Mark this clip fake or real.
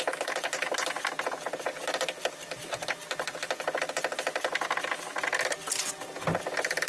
real